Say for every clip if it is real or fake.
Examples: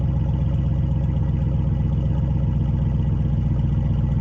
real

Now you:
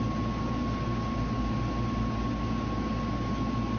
real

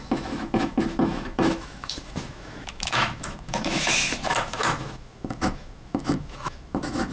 fake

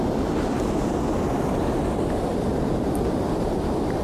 real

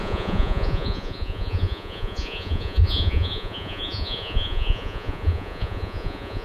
fake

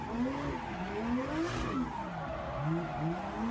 real